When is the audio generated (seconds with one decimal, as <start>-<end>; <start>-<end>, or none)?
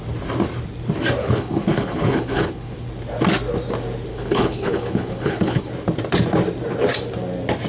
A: 1.2-2.7; 4.1-5.7